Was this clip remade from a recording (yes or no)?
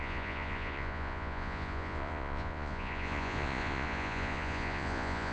yes